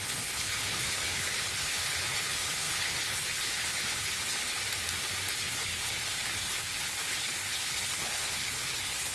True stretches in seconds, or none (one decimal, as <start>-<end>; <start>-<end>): 4.6-5.3